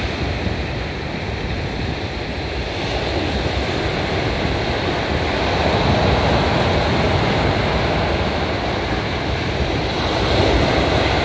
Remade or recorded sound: recorded